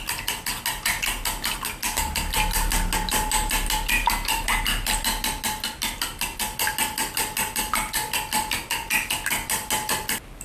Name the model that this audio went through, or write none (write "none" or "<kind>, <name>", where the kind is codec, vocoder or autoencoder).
none